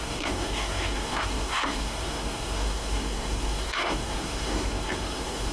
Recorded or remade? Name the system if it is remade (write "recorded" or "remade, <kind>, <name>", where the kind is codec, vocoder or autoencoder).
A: remade, codec, SNAC